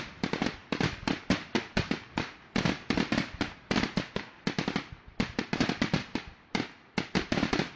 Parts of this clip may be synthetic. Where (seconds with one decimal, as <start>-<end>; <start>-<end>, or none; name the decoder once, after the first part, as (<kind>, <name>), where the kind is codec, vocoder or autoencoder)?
0.0-7.8 (vocoder, BigVGAN v2)